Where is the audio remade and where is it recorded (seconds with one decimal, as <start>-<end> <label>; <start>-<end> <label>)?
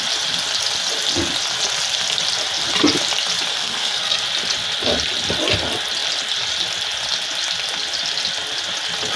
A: 0.0-3.5 recorded; 3.5-4.2 remade; 4.2-9.2 recorded